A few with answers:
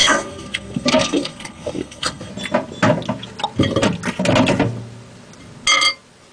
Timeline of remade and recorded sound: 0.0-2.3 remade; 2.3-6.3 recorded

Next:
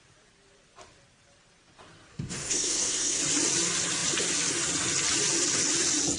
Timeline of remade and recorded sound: 0.0-2.1 recorded; 2.1-3.2 remade; 3.2-6.2 recorded